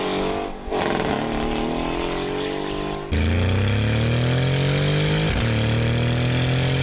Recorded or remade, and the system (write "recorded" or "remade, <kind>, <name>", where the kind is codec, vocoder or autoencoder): recorded